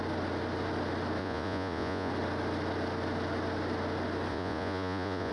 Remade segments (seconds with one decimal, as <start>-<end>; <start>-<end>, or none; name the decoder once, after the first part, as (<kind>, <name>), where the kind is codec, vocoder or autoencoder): 1.2-2.1 (vocoder, Vocos); 4.3-5.3

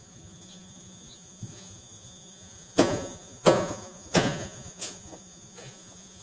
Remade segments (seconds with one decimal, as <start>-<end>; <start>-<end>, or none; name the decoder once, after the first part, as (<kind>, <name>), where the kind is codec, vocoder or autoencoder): 0.0-6.2 (vocoder, Vocos)